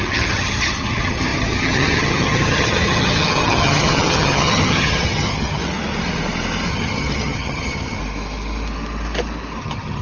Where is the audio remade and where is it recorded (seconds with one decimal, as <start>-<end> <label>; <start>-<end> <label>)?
0.0-5.6 remade; 5.6-6.7 recorded; 6.7-8.0 remade; 8.0-9.6 recorded; 9.6-10.0 remade